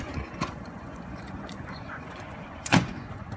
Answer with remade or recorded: remade